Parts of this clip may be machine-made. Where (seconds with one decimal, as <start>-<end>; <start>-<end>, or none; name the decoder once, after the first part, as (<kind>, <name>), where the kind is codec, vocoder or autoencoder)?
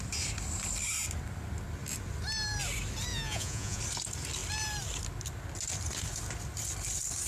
3.1-3.8 (vocoder, Vocos)